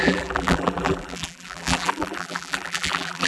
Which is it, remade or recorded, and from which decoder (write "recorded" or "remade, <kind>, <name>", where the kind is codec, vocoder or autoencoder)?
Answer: remade, vocoder, BigVGAN v2